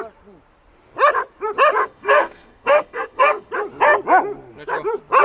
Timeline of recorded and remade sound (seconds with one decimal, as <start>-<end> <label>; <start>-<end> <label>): 0.0-1.8 recorded; 1.8-3.5 remade; 3.5-5.2 recorded